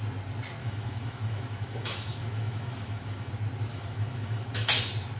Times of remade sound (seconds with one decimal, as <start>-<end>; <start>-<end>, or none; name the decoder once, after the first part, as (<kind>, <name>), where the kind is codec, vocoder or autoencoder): 0.6-3.3 (autoencoder, DAC-VAE); 3.7-4.8